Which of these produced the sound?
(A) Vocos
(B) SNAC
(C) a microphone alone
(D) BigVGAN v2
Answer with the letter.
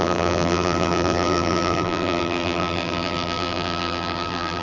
D